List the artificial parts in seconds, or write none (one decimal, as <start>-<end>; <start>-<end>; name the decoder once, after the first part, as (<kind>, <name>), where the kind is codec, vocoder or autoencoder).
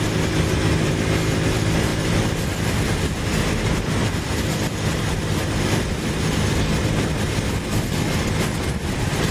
none